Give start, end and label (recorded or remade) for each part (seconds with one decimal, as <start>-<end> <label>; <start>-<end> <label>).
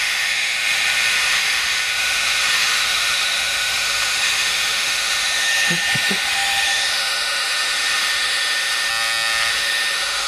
0.0-8.9 remade; 8.9-9.5 recorded; 9.5-10.3 remade